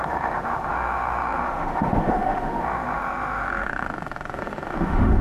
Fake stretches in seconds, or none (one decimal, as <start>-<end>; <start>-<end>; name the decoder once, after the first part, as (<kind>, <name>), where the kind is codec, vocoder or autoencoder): 0.0-5.2 (autoencoder, DAC-VAE)